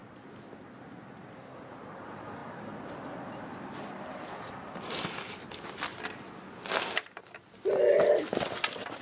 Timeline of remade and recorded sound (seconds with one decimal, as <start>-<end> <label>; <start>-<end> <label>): 0.0-9.0 recorded